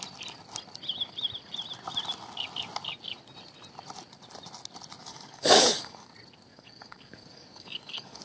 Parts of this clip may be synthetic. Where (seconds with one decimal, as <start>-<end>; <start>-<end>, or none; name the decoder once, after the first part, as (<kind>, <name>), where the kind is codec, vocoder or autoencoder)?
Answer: 5.0-6.1 (codec, DAC); 6.5-8.2